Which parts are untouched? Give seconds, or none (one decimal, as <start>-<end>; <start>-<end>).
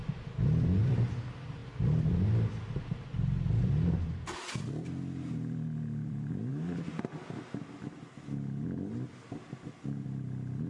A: 0.0-0.8; 1.6-5.3; 6.5-10.7